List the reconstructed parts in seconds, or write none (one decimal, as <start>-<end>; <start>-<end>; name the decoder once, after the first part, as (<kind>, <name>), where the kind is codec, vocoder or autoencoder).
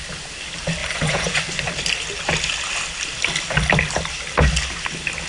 0.8-1.7 (vocoder, Vocos)